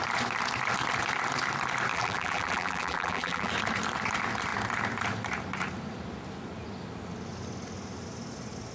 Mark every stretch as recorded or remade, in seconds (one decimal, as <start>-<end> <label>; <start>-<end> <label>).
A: 0.0-1.9 recorded; 1.9-3.5 remade; 3.5-8.7 recorded